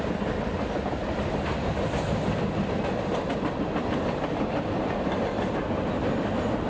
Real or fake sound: real